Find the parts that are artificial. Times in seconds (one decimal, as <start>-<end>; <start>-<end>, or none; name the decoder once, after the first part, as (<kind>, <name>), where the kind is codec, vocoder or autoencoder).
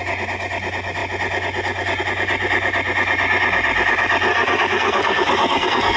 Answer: 4.3-6.0 (codec, SNAC)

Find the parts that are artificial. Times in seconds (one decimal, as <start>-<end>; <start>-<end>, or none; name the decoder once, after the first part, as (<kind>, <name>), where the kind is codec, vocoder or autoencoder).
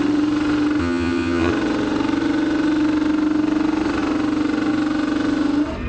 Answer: 0.8-1.5 (vocoder, HiFi-GAN)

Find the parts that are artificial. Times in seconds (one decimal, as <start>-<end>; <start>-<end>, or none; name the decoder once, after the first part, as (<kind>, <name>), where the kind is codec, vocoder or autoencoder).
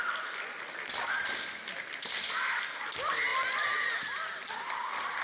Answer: none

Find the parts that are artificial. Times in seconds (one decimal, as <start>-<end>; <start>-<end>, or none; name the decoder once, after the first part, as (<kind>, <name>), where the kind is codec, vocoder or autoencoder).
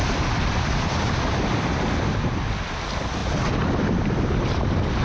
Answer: 0.0-2.1 (vocoder, BigVGAN v2); 3.2-4.2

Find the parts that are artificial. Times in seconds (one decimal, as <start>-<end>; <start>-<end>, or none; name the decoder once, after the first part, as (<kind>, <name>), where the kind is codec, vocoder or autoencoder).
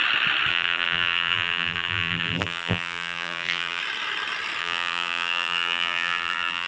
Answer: 0.5-3.8 (vocoder, BigVGAN v2); 4.6-6.7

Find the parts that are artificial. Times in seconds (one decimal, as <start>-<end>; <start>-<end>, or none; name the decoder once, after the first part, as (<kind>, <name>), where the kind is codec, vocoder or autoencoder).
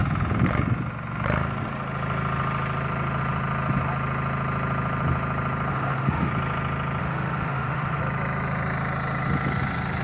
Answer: 5.7-6.3 (autoencoder, DAC-VAE); 7.0-8.0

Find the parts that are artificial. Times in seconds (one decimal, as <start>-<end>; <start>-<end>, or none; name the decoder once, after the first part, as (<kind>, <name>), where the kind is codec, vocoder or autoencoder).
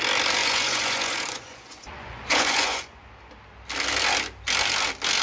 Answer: 0.4-3.1 (vocoder, Vocos)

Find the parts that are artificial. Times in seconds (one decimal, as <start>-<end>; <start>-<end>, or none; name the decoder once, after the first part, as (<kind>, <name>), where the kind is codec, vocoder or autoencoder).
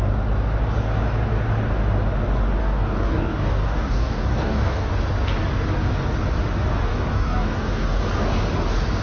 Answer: 2.6-4.9 (codec, DAC); 6.9-8.0